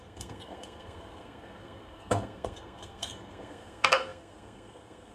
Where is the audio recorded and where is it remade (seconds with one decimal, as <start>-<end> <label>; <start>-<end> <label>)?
0.0-5.1 remade